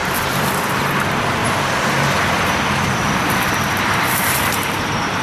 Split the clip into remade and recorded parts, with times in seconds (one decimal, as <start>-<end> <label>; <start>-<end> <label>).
0.0-0.8 remade; 0.8-1.4 recorded; 1.4-4.5 remade; 4.5-5.2 recorded